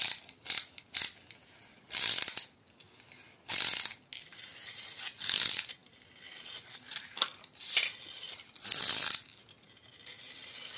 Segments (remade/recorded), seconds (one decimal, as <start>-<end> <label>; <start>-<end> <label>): 0.0-10.8 recorded